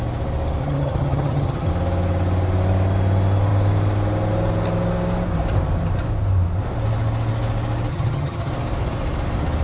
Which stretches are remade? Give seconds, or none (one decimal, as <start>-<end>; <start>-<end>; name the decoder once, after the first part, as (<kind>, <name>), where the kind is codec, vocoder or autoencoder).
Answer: 0.6-1.7 (vocoder, HiFi-GAN); 7.9-8.5